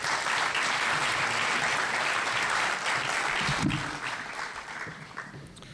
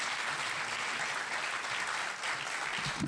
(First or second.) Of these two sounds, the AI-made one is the first